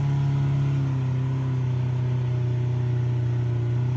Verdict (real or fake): real